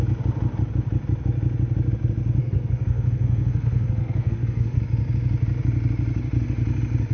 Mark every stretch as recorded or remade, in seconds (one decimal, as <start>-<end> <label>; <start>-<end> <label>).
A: 0.0-2.4 recorded; 2.4-4.8 remade; 4.8-7.1 recorded